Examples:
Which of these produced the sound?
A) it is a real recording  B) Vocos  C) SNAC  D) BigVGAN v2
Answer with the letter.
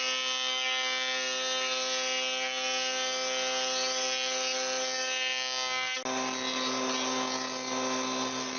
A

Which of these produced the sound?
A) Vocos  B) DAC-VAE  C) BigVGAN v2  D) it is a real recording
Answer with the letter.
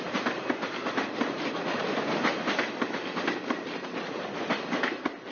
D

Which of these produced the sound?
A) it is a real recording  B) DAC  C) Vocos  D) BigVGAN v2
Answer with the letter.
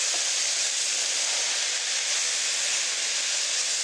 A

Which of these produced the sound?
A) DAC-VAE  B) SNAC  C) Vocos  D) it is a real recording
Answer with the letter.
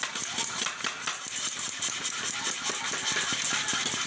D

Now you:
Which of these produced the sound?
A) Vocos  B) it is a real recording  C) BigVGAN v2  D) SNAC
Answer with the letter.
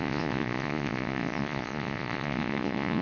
A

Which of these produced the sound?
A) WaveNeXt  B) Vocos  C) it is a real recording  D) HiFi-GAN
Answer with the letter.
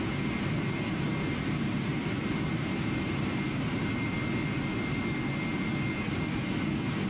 C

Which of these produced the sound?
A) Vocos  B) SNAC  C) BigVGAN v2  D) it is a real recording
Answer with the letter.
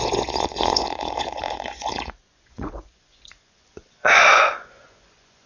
A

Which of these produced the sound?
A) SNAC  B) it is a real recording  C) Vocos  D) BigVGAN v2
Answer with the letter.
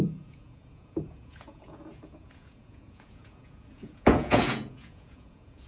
C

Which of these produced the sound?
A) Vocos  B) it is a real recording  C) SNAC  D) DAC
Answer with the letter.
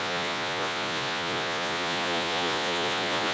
A